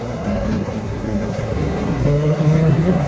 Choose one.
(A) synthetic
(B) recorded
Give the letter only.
A